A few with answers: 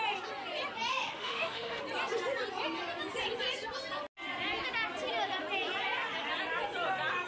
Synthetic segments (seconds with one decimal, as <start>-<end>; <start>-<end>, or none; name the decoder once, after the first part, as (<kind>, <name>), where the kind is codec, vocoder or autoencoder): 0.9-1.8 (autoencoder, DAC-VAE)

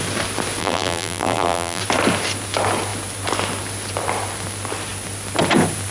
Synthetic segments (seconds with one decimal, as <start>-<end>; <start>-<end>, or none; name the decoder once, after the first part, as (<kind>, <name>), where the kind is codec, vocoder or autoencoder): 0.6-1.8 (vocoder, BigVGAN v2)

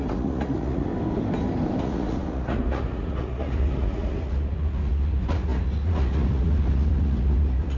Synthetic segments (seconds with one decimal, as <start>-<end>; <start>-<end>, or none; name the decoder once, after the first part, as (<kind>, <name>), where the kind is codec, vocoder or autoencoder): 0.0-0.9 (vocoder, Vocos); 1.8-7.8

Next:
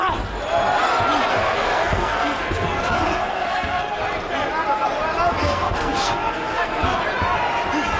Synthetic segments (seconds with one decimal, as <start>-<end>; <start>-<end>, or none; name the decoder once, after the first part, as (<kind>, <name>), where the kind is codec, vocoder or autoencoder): 1.3-4.0 (codec, SNAC); 5.4-7.0

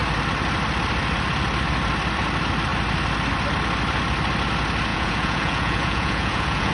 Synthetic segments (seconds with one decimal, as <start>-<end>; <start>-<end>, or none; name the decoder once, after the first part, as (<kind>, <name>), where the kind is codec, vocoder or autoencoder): 4.9-6.7 (vocoder, Vocos)

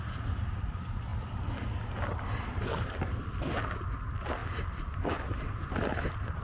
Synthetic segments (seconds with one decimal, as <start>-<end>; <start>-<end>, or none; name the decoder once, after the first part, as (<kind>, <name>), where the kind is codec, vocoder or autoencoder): none